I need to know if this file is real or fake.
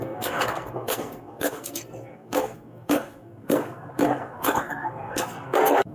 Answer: fake